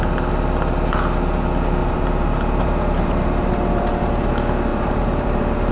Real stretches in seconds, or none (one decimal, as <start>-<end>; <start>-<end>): 0.0-1.8; 4.3-4.7